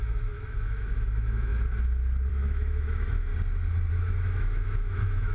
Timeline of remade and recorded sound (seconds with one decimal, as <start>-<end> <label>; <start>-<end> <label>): 0.0-1.5 remade; 1.5-2.3 recorded; 2.3-3.3 remade; 3.3-3.9 recorded; 3.9-5.3 remade